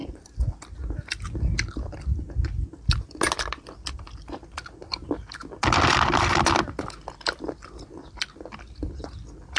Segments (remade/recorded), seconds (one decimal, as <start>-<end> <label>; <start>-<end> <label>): 0.0-9.6 recorded